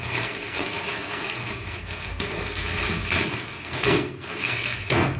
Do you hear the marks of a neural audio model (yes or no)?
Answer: yes